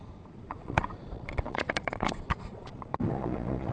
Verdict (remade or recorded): remade